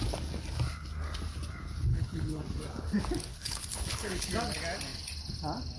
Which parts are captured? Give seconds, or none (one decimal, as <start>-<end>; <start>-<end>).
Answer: 0.0-1.9; 2.4-3.3; 4.3-5.8